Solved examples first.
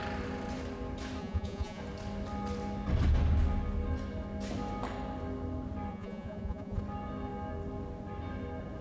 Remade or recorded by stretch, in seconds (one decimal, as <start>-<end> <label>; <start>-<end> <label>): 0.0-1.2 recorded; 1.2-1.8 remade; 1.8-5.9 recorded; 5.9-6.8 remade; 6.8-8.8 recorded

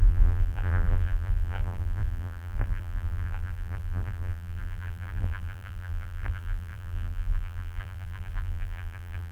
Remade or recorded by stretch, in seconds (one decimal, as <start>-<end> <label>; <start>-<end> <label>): 0.0-9.3 remade

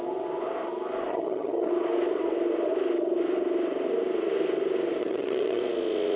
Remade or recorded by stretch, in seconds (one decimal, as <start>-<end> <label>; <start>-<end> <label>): 0.0-1.1 recorded; 1.1-1.7 remade; 1.7-5.0 recorded; 5.0-5.6 remade; 5.6-6.2 recorded

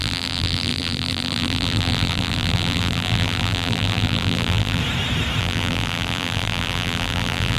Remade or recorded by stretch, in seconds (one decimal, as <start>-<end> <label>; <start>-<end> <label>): 0.0-4.8 remade; 4.8-5.4 recorded; 5.4-7.6 remade